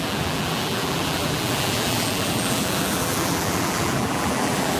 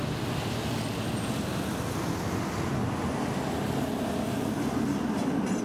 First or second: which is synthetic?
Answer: first